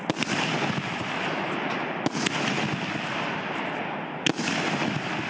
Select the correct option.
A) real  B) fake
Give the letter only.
A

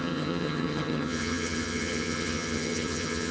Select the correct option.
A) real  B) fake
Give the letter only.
B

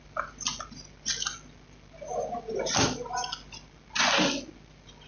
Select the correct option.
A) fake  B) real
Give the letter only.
B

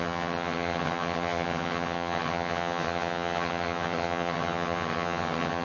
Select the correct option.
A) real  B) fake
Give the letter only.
B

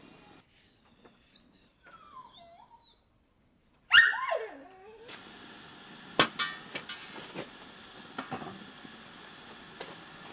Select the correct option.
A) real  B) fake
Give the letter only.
A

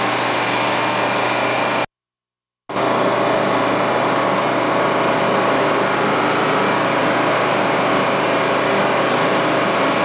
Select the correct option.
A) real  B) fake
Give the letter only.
A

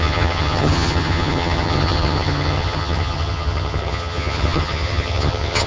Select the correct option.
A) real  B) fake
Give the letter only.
B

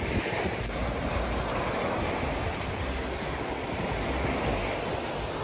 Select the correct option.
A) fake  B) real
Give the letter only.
B